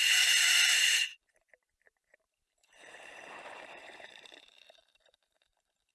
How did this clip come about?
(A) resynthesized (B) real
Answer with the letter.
A